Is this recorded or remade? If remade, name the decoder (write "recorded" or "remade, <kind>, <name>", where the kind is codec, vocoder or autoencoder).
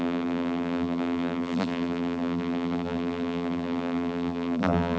remade, vocoder, BigVGAN v2